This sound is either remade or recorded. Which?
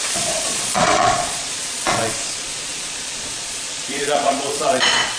remade